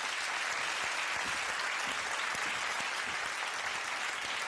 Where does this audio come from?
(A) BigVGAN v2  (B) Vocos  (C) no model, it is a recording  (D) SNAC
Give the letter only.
C